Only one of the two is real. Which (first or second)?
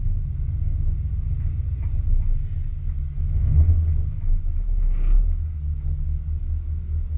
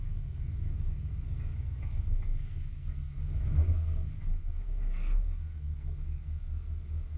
first